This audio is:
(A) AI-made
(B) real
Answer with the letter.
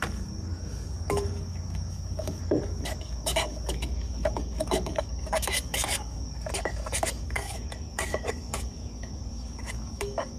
A